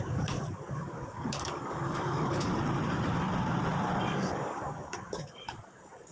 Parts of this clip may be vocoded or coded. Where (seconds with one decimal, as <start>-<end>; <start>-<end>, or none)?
0.0-2.5; 4.1-6.1